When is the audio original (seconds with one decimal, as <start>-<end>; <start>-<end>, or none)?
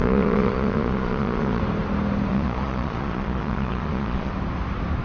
1.6-2.3; 4.3-5.0